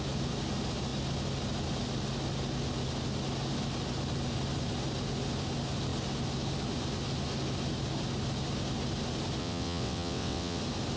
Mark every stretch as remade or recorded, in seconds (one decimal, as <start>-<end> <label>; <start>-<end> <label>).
0.0-9.4 recorded; 9.4-10.6 remade; 10.6-11.0 recorded